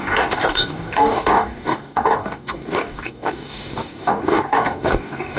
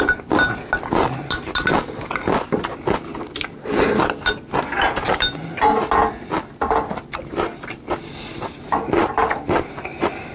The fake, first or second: first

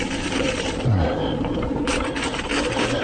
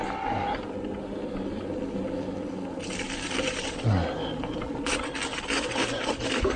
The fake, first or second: first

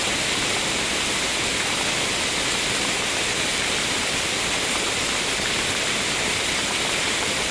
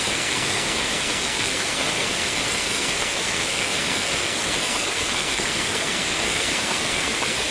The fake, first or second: second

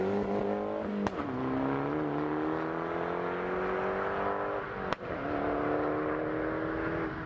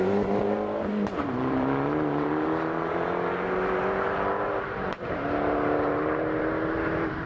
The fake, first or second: second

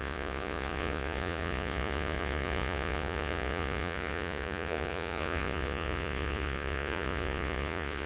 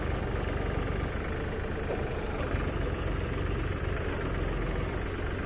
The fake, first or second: first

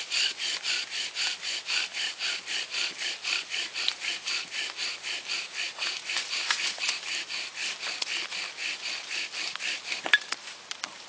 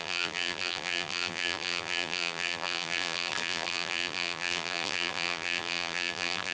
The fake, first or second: second